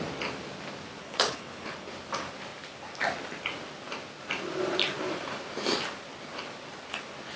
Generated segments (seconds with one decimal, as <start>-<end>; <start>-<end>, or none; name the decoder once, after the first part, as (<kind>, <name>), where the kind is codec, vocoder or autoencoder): 1.0-1.9 (codec, HILCodec)